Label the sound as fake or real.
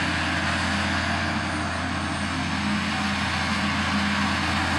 real